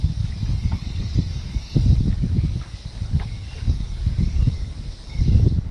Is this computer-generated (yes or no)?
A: yes